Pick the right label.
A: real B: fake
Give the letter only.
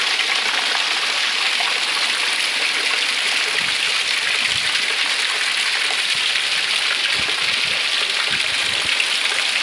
A